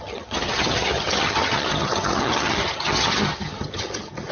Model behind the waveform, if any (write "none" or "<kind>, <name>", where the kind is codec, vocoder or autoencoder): vocoder, HiFi-GAN